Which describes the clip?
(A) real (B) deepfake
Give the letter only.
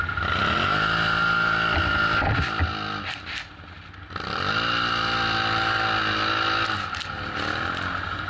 A